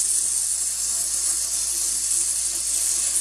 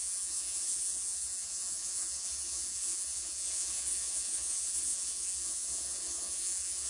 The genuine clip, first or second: first